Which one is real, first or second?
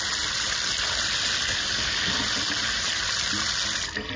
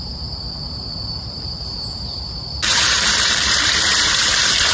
first